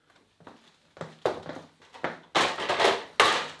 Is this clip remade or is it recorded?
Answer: recorded